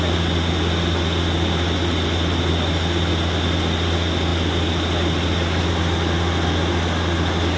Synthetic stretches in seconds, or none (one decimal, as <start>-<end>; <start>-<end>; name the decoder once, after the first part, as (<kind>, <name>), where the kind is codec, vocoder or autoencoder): none